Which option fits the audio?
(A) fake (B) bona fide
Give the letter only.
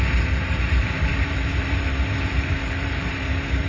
A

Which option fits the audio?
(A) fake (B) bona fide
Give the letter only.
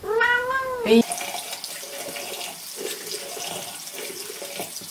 B